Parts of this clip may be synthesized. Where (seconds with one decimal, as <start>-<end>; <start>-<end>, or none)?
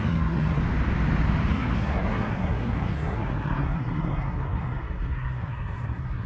0.0-0.6; 1.5-6.3